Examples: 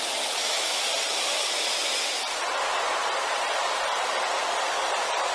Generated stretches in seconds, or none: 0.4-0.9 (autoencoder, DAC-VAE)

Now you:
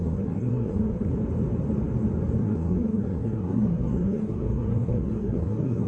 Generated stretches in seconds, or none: 0.0-1.1 (codec, SNAC); 2.4-5.9